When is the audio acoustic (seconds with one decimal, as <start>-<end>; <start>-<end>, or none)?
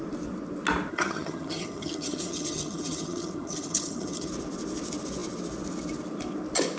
0.0-0.9; 4.3-6.8